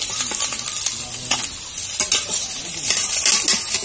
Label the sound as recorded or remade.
recorded